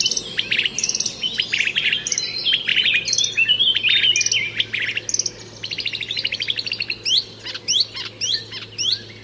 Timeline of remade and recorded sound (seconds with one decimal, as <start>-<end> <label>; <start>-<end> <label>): 0.0-9.2 recorded